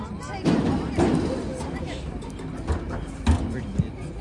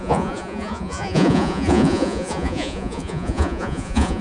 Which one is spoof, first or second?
second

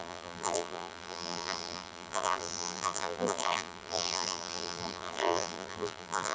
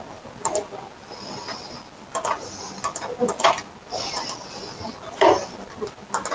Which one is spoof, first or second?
first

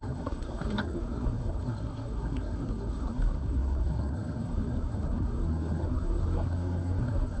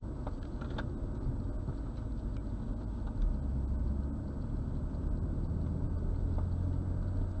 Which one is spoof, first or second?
first